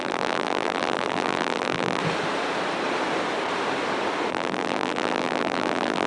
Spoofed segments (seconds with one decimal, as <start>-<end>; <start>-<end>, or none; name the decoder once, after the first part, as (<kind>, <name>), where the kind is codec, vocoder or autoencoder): 0.0-2.0 (vocoder, BigVGAN v2); 4.3-6.1